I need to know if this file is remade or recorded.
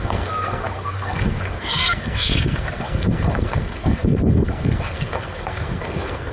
remade